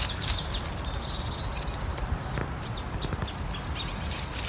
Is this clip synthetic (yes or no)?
no